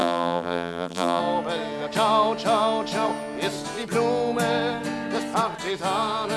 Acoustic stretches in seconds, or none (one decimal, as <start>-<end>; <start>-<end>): 1.2-6.4

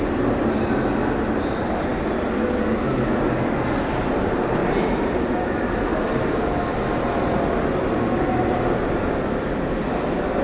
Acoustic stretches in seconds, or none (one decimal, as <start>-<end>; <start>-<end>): 0.0-4.6; 6.2-10.4

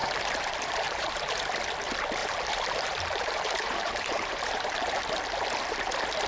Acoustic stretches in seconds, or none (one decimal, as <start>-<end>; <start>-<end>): 1.5-2.2; 5.0-6.3